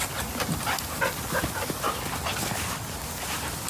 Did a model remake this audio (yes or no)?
no